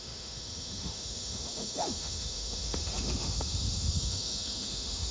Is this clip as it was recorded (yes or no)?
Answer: no